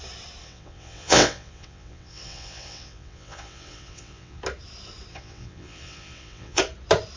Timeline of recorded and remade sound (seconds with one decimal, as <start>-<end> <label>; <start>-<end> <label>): 0.0-0.4 recorded; 0.4-4.4 remade; 4.4-5.1 recorded; 5.1-6.6 remade; 6.6-7.2 recorded